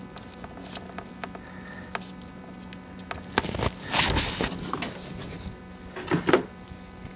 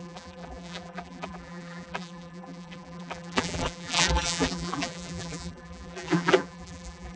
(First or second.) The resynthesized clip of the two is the second